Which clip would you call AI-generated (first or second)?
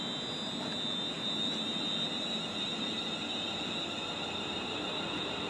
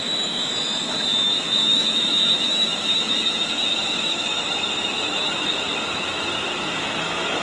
second